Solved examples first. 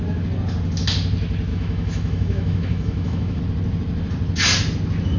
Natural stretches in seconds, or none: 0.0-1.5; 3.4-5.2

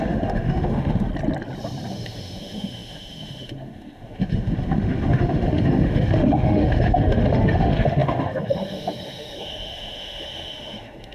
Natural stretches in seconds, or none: 1.1-1.9

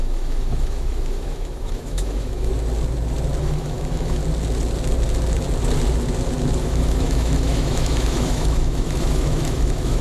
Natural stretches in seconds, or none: 2.5-3.4; 4.2-6.6